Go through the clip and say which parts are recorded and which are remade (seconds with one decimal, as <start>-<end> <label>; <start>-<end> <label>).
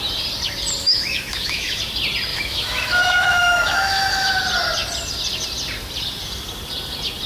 0.0-0.8 recorded; 0.8-1.8 remade; 1.8-2.3 recorded; 2.3-4.3 remade; 4.3-7.3 recorded